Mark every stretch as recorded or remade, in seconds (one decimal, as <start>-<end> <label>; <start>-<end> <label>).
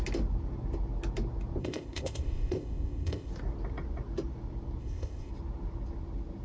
0.0-1.6 recorded; 1.6-3.3 remade; 3.3-4.8 recorded; 4.8-5.3 remade; 5.3-6.4 recorded